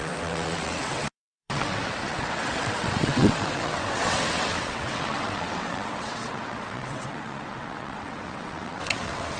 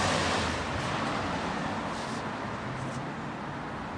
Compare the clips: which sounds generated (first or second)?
first